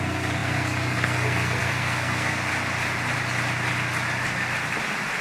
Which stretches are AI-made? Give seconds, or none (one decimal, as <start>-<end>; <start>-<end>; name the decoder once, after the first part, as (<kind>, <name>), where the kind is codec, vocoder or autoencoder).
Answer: 0.0-2.5 (codec, SNAC)